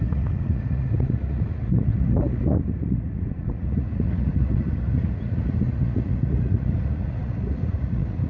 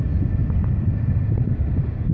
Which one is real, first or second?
second